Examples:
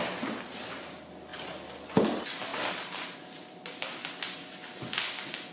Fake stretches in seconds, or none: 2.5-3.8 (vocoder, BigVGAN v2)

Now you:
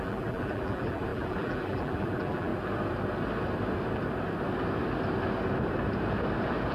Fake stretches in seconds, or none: 0.0-2.5 (vocoder, BigVGAN v2)

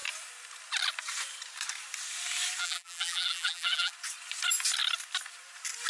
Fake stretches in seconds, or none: 2.6-3.9 (vocoder, BigVGAN v2)

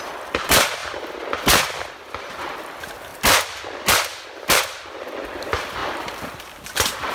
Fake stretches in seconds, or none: 3.1-4.6 (vocoder, BigVGAN v2); 5.8-6.4